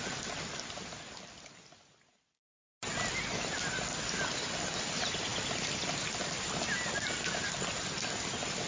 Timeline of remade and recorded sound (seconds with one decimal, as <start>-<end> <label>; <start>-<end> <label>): 0.0-8.7 recorded